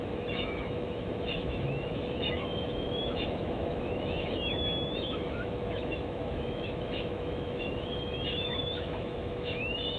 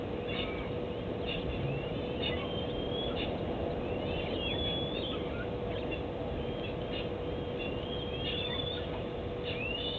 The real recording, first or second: second